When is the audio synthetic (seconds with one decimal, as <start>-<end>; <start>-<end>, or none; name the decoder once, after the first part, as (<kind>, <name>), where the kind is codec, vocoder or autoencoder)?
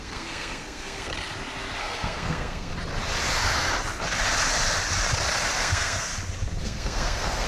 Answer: 0.0-1.1 (codec, SNAC); 1.8-2.7; 5.6-6.1; 6.6-7.5